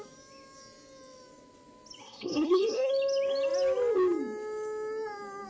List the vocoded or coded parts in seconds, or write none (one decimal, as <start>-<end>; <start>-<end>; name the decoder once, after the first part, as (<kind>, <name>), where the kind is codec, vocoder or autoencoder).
2.0-2.9 (codec, SNAC)